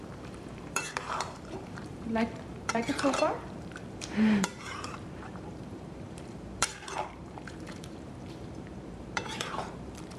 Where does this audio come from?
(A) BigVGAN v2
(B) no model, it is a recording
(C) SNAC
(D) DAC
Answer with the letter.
A